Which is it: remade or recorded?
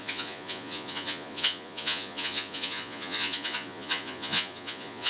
remade